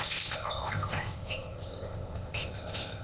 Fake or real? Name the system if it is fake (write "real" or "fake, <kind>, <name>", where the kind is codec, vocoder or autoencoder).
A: fake, codec, ZipCodec